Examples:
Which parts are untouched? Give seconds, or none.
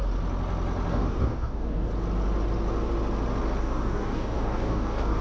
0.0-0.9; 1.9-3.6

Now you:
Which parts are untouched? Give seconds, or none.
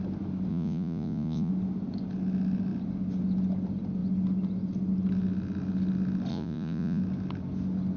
0.0-0.5; 1.5-6.3; 7.0-8.0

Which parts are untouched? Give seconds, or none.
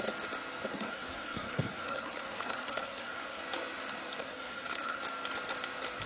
0.0-0.7; 3.4-4.2; 5.0-6.1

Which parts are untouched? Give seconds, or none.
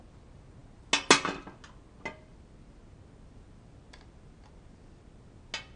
0.0-5.8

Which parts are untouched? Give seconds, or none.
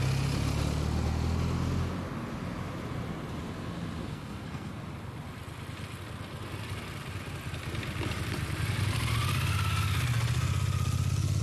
0.0-4.0; 4.8-11.4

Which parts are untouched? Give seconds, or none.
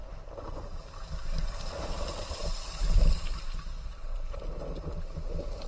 0.0-5.7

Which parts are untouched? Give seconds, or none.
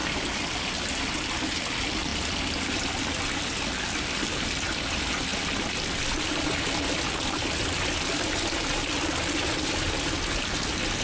0.0-11.0